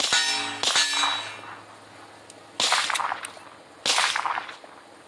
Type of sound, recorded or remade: recorded